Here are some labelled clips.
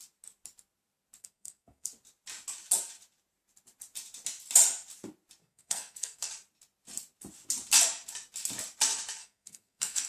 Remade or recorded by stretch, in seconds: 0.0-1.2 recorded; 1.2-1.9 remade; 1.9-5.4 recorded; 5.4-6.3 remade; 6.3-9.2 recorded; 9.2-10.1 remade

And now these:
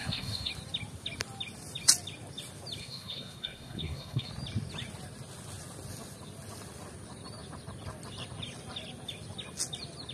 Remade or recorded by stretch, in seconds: 0.0-0.5 remade; 0.5-2.8 recorded; 2.8-4.3 remade; 4.3-10.1 recorded

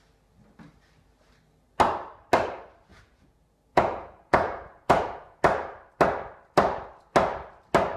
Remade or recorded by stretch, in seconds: 0.0-2.9 recorded; 2.9-5.4 remade; 5.4-8.0 recorded